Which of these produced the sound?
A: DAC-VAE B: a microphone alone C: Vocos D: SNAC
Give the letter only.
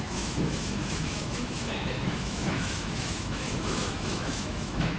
A